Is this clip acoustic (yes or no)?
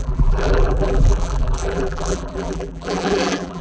no